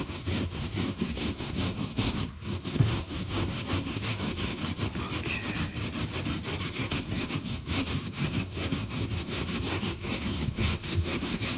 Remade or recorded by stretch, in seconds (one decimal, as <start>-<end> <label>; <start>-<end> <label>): 0.0-4.6 remade; 4.6-6.6 recorded; 6.6-11.6 remade